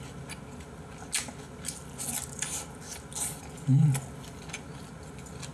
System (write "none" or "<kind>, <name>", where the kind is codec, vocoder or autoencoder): none